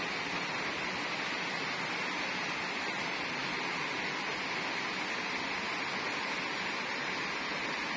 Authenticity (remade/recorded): recorded